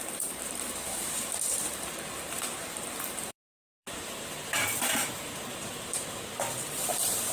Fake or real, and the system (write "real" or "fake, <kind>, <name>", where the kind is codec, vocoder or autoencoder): fake, vocoder, BigVGAN v2